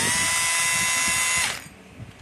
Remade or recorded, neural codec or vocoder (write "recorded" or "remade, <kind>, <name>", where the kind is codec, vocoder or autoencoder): recorded